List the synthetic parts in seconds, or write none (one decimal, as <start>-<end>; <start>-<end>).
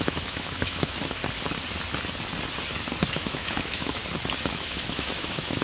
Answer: 0.0-1.2; 3.1-4.0; 4.5-5.6